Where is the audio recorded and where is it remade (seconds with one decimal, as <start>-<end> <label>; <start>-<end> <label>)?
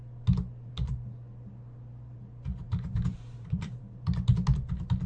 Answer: 0.0-2.5 recorded; 2.5-3.8 remade; 3.8-5.1 recorded